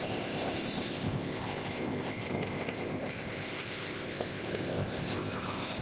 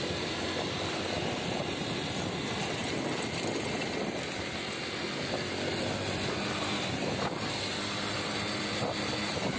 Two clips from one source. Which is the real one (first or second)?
second